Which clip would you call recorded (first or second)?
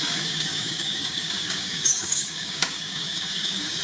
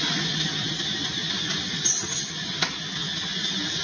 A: second